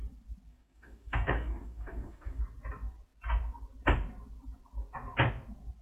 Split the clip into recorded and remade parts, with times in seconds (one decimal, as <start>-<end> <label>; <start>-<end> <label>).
0.0-0.5 recorded; 0.5-2.4 remade; 2.4-5.8 recorded